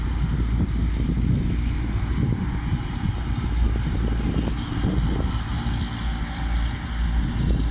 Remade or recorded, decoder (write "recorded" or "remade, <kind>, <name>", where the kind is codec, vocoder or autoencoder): recorded